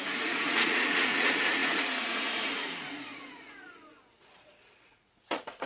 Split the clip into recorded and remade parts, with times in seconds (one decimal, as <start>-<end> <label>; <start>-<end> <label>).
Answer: 0.0-5.7 remade